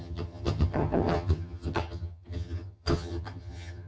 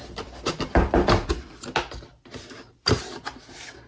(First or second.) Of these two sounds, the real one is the second